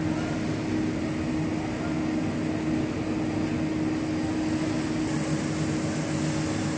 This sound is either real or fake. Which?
real